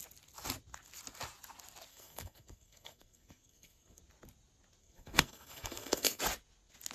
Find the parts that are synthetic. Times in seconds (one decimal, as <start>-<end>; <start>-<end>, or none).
1.9-4.0; 4.8-6.2